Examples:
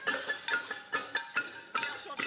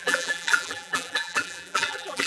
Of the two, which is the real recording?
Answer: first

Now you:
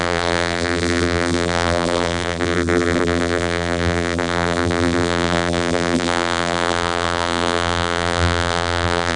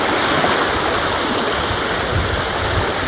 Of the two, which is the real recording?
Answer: second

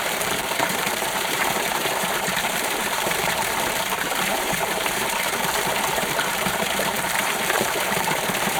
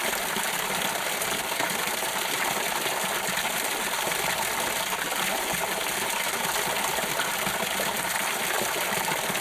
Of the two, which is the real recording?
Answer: second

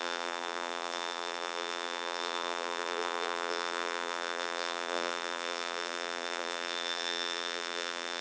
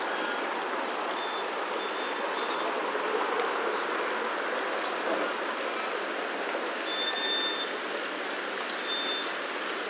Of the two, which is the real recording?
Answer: second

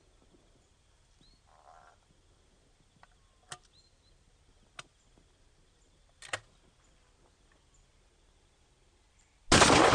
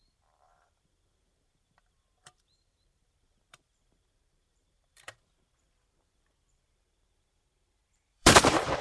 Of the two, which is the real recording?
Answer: first